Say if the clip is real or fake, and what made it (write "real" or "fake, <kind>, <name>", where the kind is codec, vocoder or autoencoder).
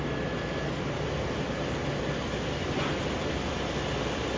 real